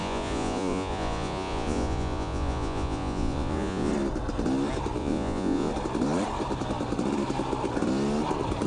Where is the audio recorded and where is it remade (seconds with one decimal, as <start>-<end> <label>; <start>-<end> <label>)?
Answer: 0.0-3.9 remade; 3.9-5.0 recorded; 5.0-5.7 remade; 5.7-8.7 recorded